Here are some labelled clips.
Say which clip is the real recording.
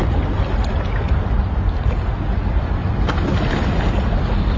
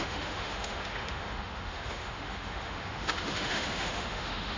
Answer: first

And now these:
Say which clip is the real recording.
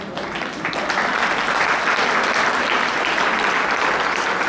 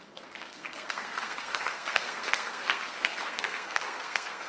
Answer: first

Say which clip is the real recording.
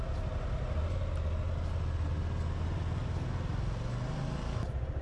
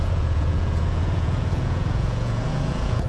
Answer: first